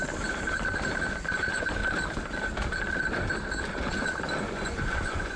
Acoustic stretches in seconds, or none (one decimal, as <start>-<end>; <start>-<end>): 0.0-1.4; 1.8-4.4